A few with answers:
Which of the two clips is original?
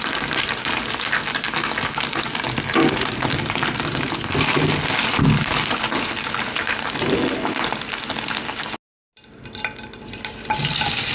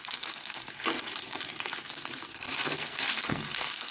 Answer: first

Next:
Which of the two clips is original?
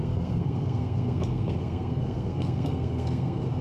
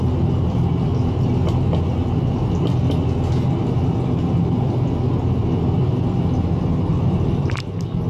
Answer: second